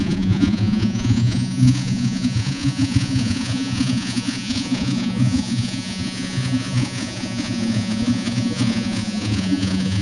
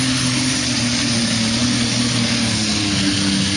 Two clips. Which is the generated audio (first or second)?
first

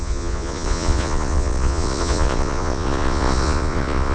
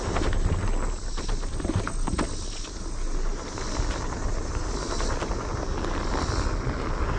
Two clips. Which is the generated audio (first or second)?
first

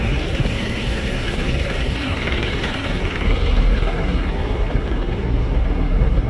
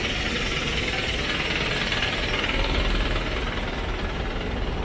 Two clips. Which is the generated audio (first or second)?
first